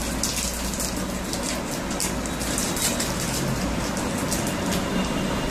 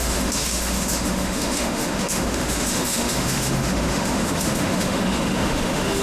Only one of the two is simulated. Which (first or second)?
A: second